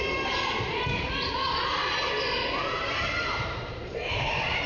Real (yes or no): no